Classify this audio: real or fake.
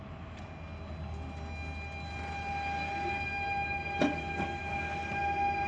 real